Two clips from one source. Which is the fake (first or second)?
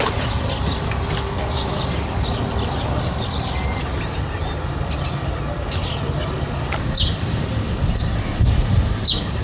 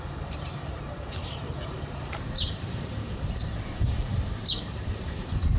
second